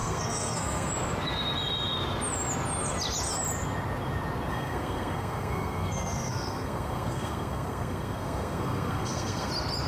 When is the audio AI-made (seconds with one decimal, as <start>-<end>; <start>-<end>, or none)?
0.0-0.9; 4.5-9.5